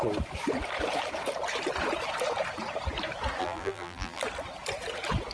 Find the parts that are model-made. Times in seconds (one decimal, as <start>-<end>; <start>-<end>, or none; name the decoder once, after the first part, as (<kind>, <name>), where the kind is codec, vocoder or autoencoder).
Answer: 3.4-4.2 (vocoder, BigVGAN v2)

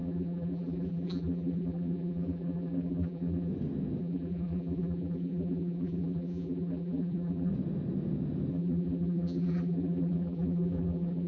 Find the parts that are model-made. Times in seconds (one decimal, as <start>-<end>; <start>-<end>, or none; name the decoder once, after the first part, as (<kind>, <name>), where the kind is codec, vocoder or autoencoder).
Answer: 0.0-3.5 (vocoder, BigVGAN v2); 4.0-7.5; 8.5-11.3

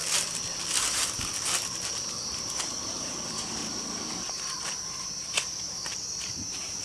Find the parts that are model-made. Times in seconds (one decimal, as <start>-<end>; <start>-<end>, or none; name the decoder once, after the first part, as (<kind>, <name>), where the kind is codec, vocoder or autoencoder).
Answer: 0.9-3.6 (vocoder, BigVGAN v2); 4.3-6.8

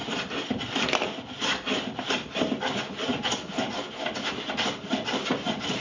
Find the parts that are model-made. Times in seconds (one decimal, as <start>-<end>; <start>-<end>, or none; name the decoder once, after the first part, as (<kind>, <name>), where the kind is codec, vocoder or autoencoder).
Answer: 0.0-3.1 (vocoder, BigVGAN v2)